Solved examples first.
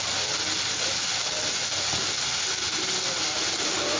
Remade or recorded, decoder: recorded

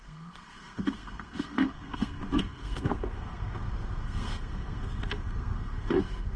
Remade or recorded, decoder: remade, codec, SNAC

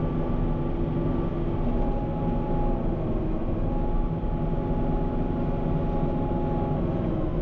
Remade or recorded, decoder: recorded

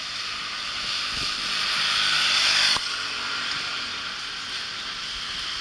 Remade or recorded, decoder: recorded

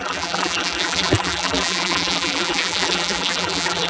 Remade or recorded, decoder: remade, vocoder, BigVGAN v2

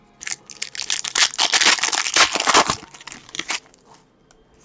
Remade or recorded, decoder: recorded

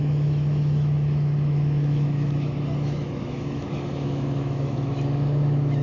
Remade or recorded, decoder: remade, autoencoder, DAC-VAE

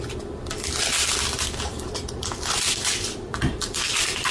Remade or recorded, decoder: remade, vocoder, BigVGAN v2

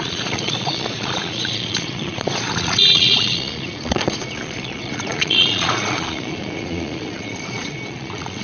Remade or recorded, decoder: remade, vocoder, Vocos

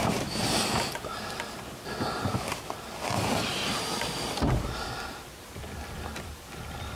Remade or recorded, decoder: recorded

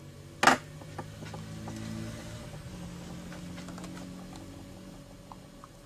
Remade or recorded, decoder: recorded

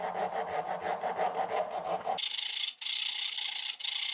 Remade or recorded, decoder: recorded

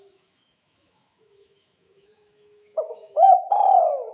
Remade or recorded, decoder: remade, autoencoder, DAC-VAE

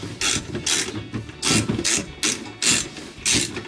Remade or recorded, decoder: recorded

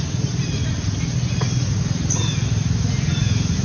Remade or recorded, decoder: recorded